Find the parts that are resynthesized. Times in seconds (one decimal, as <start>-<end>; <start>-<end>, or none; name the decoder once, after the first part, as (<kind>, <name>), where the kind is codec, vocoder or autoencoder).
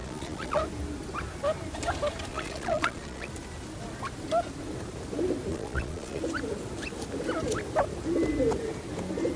0.0-0.6 (vocoder, Vocos); 2.3-3.3; 5.5-6.2